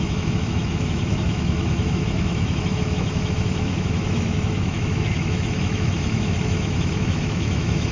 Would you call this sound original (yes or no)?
no